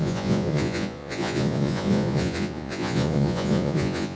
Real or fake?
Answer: fake